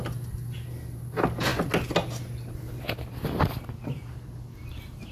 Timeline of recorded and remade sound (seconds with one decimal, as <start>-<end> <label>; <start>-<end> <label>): 0.0-5.1 recorded